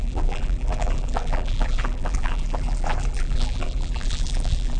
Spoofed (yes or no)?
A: yes